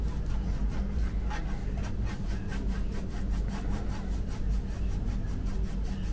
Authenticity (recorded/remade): recorded